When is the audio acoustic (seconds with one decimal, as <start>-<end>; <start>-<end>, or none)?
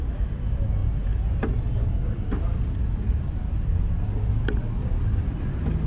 0.0-5.9